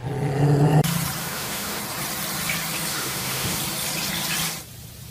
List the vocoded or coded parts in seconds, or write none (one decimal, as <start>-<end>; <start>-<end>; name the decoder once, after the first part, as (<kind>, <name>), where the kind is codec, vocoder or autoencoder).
1.2-1.8 (autoencoder, DAC-VAE); 2.9-3.6